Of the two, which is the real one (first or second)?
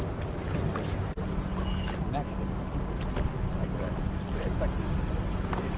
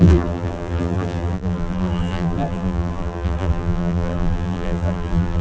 first